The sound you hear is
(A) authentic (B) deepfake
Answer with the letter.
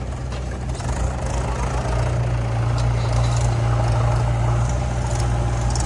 A